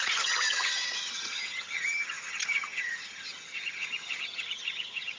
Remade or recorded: remade